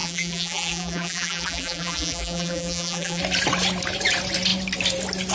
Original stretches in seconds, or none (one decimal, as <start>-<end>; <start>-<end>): 3.2-5.3